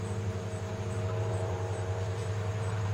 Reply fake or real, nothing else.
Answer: fake